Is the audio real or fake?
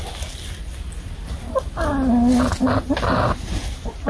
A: real